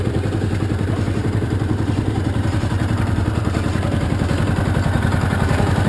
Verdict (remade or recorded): remade